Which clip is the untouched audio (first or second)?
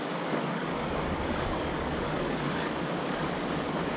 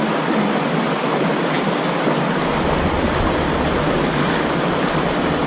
second